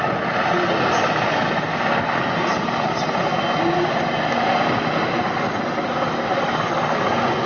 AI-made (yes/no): no